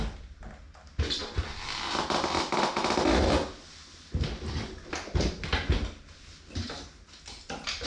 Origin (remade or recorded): recorded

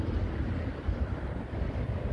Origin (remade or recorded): recorded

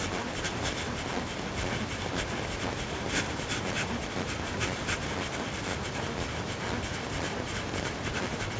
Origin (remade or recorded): recorded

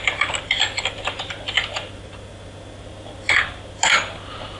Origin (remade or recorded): recorded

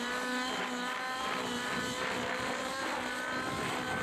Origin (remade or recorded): recorded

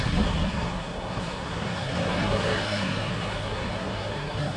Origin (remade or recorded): remade